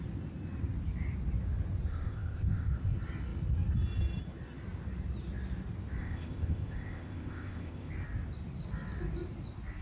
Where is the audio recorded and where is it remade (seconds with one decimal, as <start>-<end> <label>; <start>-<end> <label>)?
0.0-1.9 recorded; 1.9-2.7 remade; 2.7-6.0 recorded; 6.0-7.9 remade; 7.9-9.8 recorded